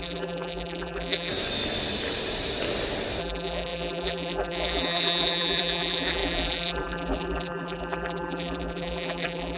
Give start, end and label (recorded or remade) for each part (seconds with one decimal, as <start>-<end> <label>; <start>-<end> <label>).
0.0-1.3 remade; 1.3-3.2 recorded; 3.2-9.6 remade